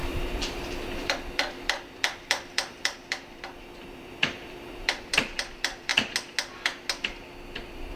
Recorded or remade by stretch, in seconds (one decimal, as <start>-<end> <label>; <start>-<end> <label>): 0.0-5.9 remade; 5.9-7.5 recorded; 7.5-8.0 remade